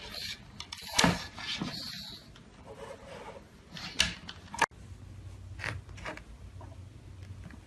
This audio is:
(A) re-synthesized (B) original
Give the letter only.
B